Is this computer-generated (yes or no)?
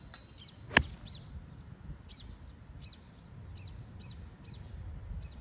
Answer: no